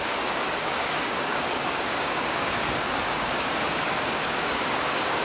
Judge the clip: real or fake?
fake